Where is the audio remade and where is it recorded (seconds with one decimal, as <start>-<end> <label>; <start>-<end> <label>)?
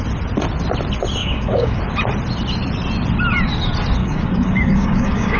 0.0-1.2 recorded; 1.2-1.8 remade; 1.8-4.0 recorded; 4.0-5.4 remade